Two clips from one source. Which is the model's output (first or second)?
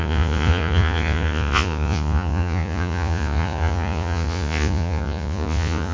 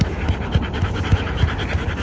first